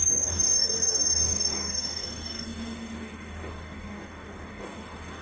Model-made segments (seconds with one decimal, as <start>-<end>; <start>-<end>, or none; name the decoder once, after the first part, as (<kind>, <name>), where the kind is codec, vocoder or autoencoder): 0.0-5.2 (codec, DAC)

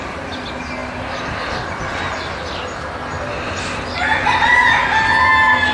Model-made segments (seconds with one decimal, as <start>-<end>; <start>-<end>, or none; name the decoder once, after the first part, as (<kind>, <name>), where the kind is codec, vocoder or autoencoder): none

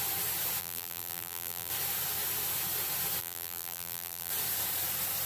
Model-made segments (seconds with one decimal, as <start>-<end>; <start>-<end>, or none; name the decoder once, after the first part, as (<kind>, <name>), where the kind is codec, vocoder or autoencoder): 0.6-1.7 (vocoder, BigVGAN v2); 3.2-4.3

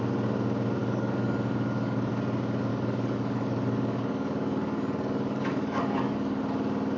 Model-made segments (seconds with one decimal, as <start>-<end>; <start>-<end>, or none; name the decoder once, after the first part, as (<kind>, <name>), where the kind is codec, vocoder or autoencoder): 0.8-2.1 (codec, DAC); 2.7-6.4

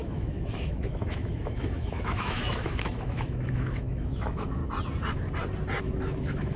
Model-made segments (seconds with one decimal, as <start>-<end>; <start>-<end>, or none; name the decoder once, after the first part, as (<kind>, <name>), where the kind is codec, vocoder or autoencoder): 0.0-4.6 (autoencoder, DAC-VAE); 5.8-6.6